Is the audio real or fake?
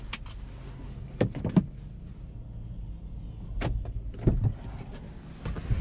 real